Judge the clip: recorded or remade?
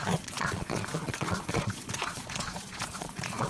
remade